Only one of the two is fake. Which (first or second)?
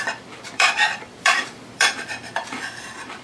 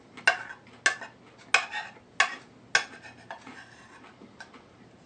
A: first